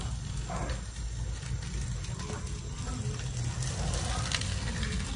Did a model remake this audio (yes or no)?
no